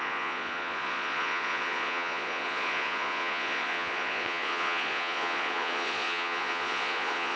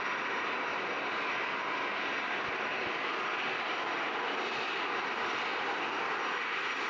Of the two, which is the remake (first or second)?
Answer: first